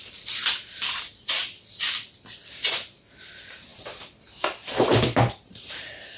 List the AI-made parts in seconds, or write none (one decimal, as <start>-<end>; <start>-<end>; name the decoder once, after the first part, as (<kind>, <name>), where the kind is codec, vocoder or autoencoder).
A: 0.0-1.4 (vocoder, BigVGAN v2); 3.2-6.2